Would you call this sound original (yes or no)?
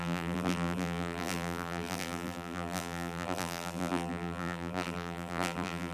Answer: no